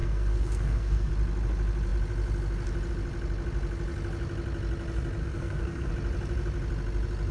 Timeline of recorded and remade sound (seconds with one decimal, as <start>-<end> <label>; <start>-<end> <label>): 0.0-1.1 remade; 1.1-5.2 recorded; 5.2-5.9 remade; 5.9-7.3 recorded